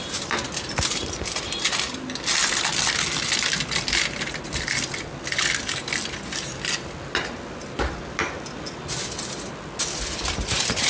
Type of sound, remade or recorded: recorded